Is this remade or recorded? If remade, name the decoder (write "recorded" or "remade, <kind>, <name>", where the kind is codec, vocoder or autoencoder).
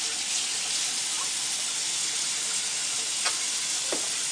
recorded